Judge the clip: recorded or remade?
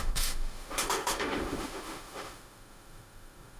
remade